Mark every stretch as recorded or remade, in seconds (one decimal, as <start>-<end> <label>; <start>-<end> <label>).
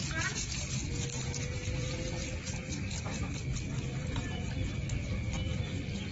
0.0-1.3 recorded; 1.3-6.1 remade